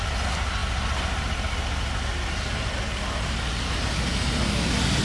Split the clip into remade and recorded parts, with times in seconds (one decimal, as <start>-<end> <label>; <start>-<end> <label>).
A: 0.0-5.0 recorded